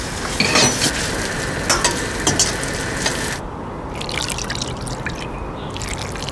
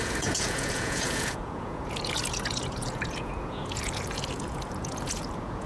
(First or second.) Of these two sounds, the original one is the first